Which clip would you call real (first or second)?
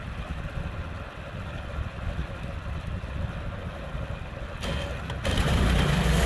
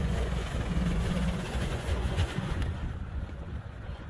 first